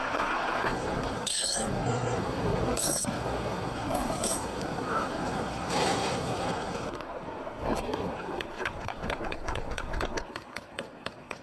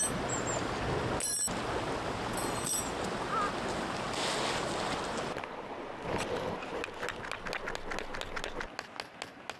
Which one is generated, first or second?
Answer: first